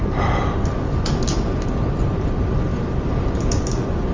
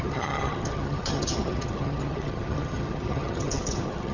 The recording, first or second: first